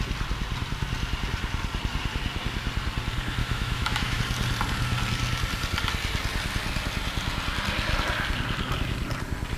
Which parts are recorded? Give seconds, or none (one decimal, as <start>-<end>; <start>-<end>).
0.0-3.4; 4.2-9.6